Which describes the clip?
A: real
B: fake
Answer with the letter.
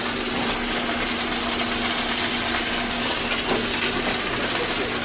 A